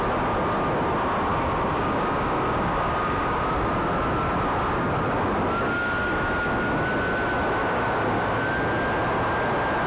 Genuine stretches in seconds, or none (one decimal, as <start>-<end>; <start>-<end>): 0.0-1.3; 3.4-7.6; 8.4-9.9